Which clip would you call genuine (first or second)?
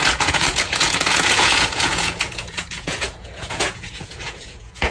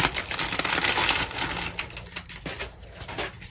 second